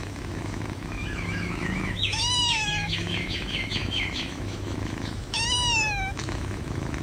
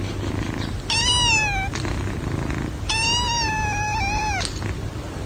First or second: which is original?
second